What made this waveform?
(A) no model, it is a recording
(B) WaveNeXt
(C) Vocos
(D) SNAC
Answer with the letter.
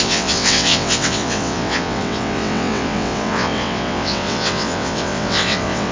B